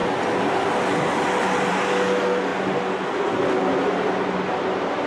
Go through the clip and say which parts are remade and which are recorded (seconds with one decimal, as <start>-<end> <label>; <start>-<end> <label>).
0.0-5.1 recorded